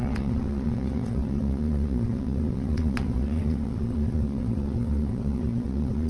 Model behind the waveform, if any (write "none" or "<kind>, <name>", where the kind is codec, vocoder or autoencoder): vocoder, WaveNeXt